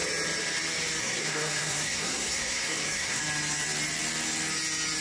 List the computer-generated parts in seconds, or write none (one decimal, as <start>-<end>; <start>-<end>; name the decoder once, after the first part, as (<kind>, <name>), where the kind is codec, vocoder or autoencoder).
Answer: 1.0-3.2 (codec, SNAC)